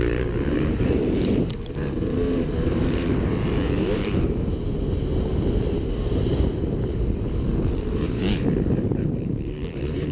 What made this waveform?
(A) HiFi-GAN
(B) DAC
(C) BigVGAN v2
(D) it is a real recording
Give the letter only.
C